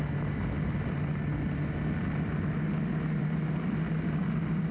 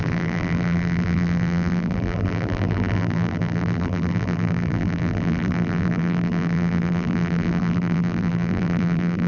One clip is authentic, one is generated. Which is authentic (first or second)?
first